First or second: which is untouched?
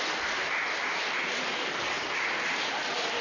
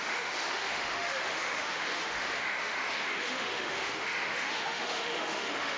first